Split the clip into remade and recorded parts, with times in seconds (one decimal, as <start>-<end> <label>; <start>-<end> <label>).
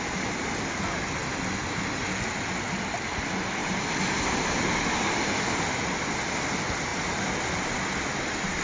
0.0-3.6 recorded; 3.6-5.4 remade; 5.4-8.6 recorded